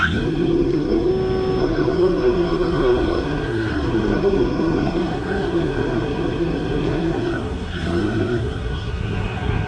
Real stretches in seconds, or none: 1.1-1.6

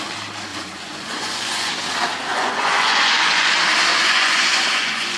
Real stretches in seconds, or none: 0.0-0.5; 1.7-2.3; 3.5-3.9

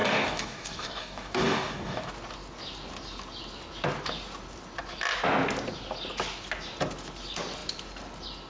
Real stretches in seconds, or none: 2.1-8.5

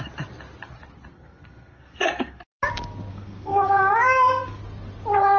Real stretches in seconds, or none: 0.0-1.1; 2.4-3.1; 4.6-5.4

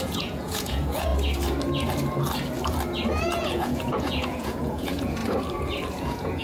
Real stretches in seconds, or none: 1.1-3.2; 5.2-5.9